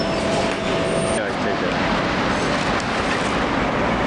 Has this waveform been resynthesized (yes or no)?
no